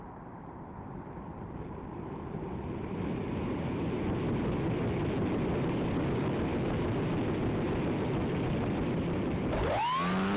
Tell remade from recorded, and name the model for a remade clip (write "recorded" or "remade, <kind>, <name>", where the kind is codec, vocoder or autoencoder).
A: recorded